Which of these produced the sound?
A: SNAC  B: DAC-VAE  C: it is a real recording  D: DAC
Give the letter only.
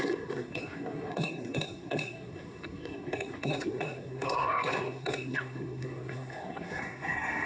A